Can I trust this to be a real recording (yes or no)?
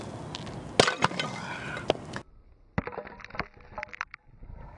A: yes